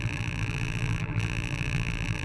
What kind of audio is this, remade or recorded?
remade